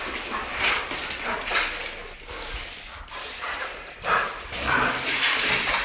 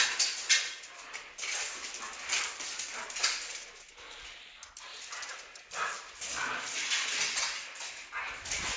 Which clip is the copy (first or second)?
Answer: first